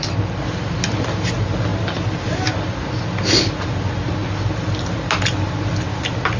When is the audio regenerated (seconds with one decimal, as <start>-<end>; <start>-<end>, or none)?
none